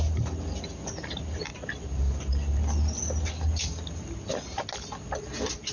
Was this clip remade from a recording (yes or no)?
no